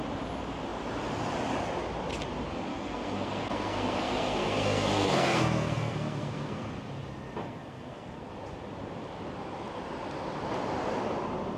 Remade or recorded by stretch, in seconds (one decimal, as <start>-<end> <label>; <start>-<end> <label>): 0.0-2.7 recorded; 2.7-6.7 remade; 6.7-7.4 recorded; 7.4-8.3 remade; 8.3-11.6 recorded